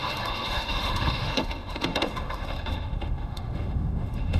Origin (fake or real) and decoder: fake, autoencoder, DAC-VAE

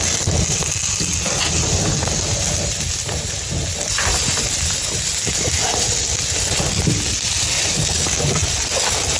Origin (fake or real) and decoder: real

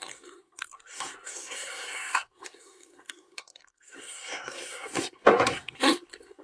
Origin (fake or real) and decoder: fake, codec, SNAC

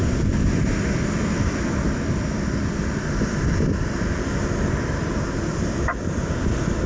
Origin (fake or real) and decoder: real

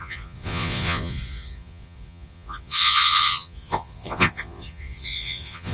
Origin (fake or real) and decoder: fake, vocoder, Vocos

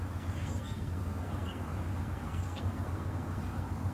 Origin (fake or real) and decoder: fake, codec, SNAC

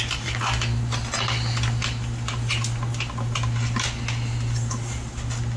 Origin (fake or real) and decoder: real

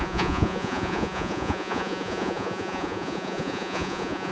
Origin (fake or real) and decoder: fake, vocoder, Vocos